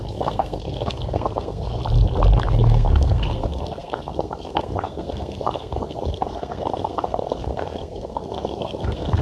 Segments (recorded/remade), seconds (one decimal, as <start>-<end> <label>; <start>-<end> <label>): 0.0-1.8 remade; 1.8-2.5 recorded; 2.5-9.2 remade